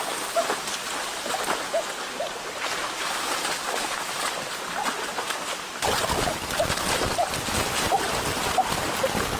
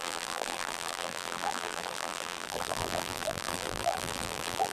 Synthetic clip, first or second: second